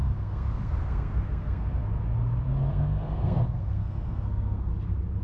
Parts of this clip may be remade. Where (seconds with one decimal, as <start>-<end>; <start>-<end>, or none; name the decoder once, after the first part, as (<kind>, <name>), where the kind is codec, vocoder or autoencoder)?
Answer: 0.0-1.8 (codec, SNAC); 2.7-4.7